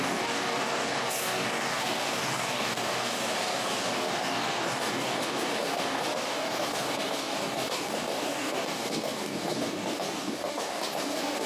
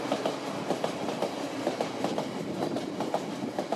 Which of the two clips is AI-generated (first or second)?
first